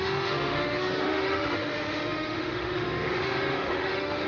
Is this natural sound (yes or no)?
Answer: no